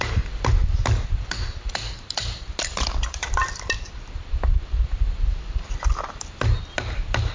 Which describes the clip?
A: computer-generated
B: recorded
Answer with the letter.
B